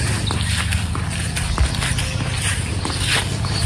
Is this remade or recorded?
recorded